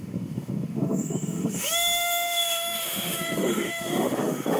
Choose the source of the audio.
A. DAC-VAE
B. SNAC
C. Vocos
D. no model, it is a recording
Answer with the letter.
A